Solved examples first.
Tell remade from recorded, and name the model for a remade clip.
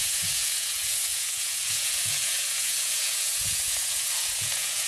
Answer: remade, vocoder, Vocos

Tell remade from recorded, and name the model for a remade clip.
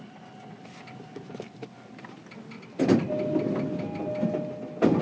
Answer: recorded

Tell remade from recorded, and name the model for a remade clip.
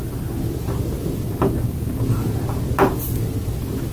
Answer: recorded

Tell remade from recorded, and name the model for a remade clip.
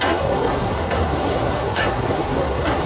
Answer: remade, codec, SNAC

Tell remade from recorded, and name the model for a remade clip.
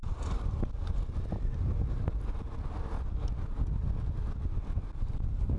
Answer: recorded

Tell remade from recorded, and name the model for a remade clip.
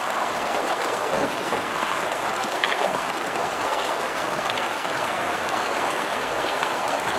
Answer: remade, codec, SNAC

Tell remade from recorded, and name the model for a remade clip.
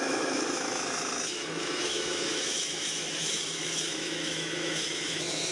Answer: remade, autoencoder, DAC-VAE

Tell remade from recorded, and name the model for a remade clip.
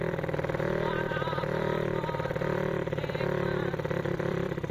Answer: remade, vocoder, BigVGAN v2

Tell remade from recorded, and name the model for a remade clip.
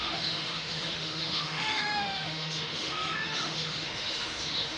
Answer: remade, autoencoder, DAC-VAE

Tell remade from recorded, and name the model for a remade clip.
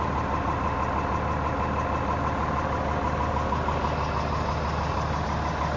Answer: recorded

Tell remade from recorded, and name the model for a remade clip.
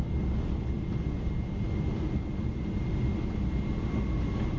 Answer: recorded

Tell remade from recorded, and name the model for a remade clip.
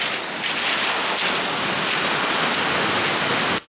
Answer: recorded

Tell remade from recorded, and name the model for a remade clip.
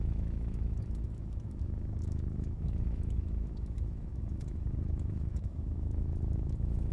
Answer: remade, autoencoder, DAC-VAE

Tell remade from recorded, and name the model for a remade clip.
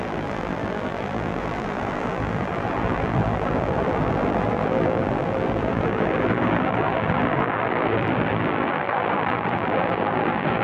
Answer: remade, vocoder, BigVGAN v2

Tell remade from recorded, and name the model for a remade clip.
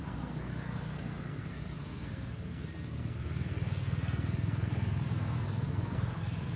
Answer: remade, codec, SNAC